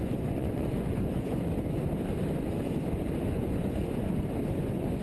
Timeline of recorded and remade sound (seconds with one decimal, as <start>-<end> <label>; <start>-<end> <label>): 0.0-1.5 remade; 1.5-3.3 recorded; 3.3-4.0 remade; 4.0-4.6 recorded; 4.6-5.0 remade